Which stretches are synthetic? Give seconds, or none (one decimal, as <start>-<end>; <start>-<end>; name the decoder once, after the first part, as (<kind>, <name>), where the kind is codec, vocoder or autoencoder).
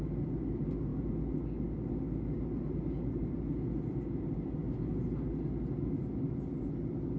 none